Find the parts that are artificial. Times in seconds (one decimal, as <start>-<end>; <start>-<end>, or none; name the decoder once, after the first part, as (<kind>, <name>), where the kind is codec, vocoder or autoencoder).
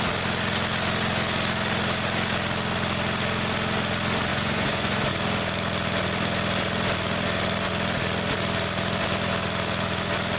4.3-5.1 (vocoder, Vocos)